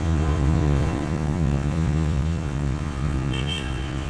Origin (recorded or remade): remade